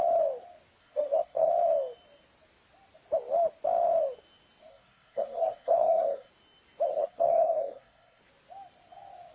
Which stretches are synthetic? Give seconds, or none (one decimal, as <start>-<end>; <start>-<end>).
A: 0.8-1.5; 4.7-6.3; 6.9-8.2